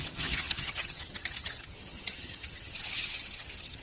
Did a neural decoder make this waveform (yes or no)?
yes